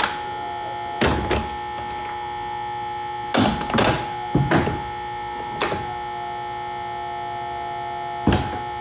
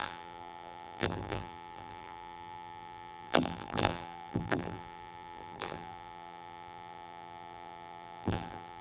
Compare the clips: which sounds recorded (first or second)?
first